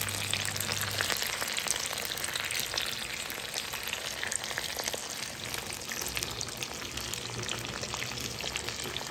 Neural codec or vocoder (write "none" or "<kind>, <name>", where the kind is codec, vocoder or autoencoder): none